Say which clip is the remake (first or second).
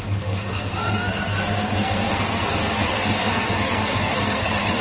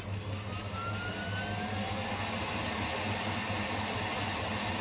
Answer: first